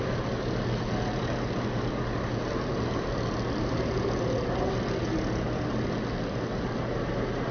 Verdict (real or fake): real